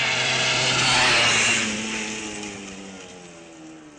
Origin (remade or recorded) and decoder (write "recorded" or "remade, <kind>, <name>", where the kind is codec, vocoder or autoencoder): recorded